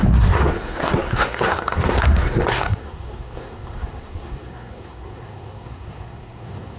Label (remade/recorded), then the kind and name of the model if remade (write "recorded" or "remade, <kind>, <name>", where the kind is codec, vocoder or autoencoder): remade, codec, SNAC